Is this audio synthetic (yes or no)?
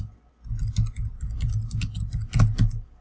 no